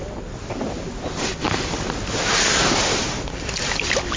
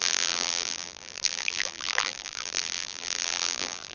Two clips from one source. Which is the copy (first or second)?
second